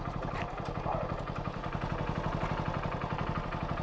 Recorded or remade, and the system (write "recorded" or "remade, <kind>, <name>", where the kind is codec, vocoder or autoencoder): recorded